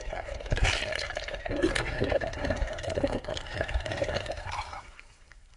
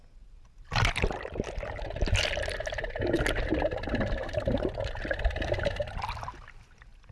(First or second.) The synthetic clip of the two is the first